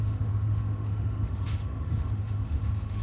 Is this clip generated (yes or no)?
yes